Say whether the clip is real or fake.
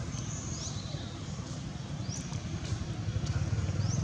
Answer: fake